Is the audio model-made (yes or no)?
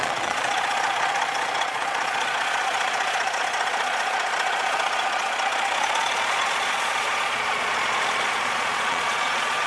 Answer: yes